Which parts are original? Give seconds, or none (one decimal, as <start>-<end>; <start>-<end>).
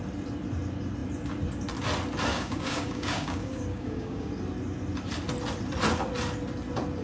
0.0-2.3; 4.3-7.0